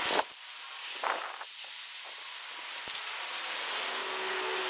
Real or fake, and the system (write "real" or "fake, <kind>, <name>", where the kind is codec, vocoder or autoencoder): real